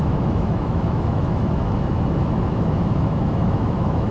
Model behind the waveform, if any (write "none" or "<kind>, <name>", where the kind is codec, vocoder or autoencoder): autoencoder, DAC-VAE